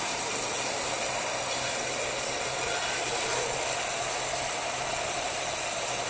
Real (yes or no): yes